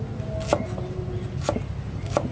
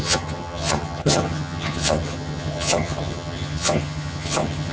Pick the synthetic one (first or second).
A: second